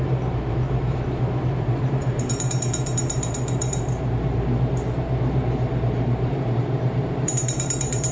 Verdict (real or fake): fake